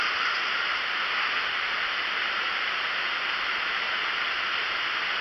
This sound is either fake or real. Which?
real